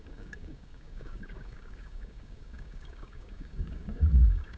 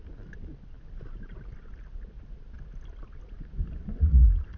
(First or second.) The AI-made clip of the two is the first